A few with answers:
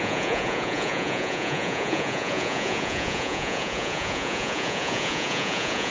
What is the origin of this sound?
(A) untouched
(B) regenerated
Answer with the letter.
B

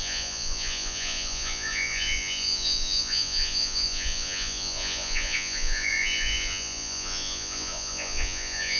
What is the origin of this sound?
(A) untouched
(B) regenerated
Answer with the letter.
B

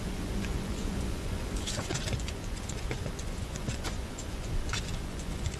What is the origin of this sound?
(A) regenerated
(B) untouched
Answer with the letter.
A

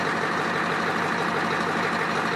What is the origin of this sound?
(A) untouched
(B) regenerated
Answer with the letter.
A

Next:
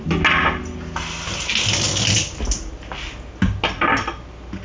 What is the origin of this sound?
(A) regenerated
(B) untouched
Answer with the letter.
B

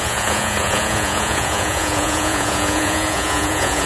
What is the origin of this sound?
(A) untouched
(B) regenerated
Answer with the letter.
B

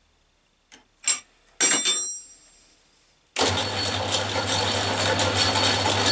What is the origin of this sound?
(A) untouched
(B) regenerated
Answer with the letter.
A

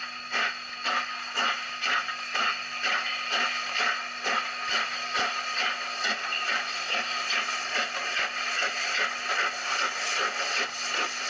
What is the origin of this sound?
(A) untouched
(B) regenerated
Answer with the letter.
A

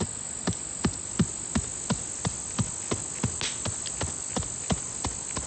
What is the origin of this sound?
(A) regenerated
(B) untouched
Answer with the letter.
B